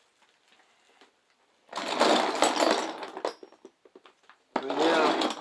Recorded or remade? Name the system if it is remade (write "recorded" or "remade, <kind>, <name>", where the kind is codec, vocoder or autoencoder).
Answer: recorded